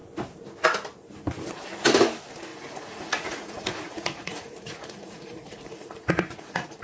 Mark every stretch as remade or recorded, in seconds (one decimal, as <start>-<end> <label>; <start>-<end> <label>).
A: 0.0-2.5 recorded; 2.5-6.8 remade